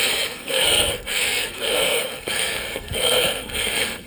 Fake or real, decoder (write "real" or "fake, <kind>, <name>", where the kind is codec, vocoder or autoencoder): fake, codec, SNAC